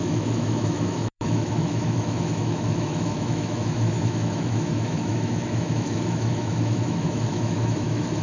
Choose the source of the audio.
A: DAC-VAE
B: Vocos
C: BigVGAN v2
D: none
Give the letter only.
A